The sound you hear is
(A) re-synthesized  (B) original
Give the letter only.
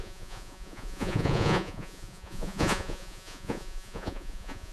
A